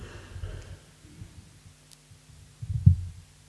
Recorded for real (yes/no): yes